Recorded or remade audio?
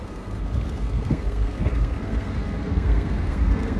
remade